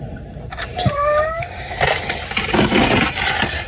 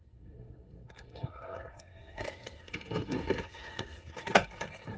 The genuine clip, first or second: first